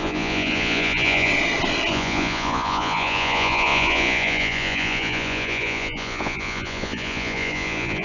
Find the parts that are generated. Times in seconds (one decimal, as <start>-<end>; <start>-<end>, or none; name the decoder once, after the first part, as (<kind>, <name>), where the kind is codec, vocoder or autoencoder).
0.0-1.3 (vocoder, Vocos); 1.9-8.0